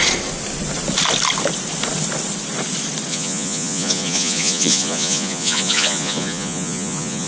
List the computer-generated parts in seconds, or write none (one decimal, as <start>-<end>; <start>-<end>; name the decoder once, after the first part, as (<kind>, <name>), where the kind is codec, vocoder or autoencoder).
3.1-7.3 (vocoder, Vocos)